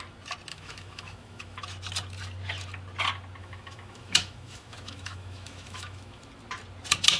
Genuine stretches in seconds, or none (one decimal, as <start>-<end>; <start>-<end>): 0.0-0.5; 1.6-3.4; 6.3-7.2